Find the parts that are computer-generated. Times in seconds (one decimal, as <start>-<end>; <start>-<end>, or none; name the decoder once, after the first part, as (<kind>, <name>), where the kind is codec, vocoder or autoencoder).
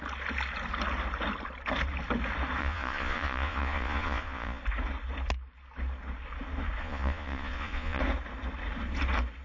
2.6-4.6 (vocoder, Vocos); 6.8-8.0